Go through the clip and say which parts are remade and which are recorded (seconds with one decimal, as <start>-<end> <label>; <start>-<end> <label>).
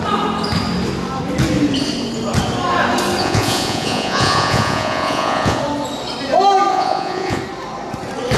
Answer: 0.0-3.2 recorded; 3.2-5.6 remade; 5.6-6.7 recorded; 6.7-7.4 remade; 7.4-8.4 recorded